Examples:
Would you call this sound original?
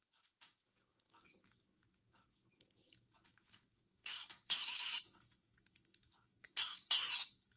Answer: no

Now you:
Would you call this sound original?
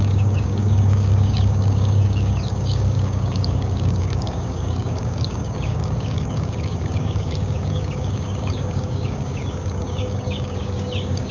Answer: no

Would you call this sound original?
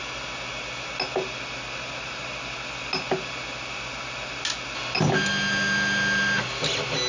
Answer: yes